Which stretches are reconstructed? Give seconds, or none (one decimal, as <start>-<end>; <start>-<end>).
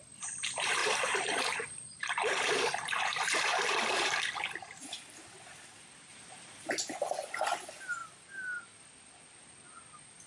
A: 0.8-4.2; 6.1-6.7